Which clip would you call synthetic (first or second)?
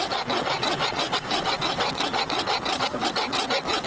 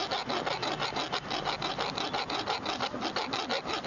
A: first